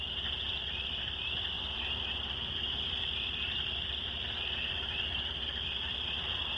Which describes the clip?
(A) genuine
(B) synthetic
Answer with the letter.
B